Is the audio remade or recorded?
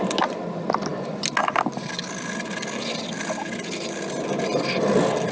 recorded